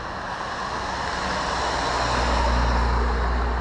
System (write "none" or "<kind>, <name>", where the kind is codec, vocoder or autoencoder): none